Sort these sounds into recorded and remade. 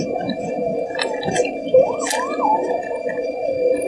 recorded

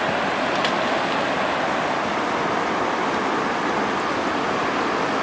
recorded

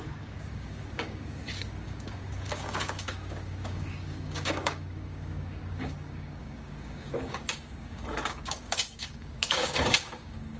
remade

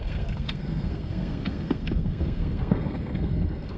remade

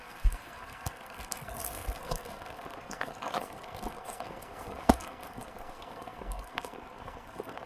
remade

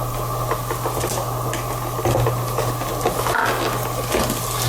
recorded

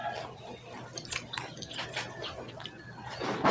recorded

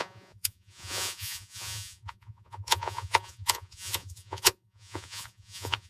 remade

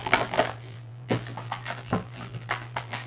remade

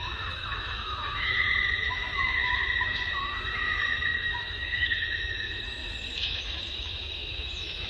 remade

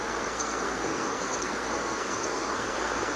remade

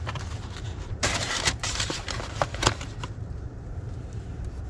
remade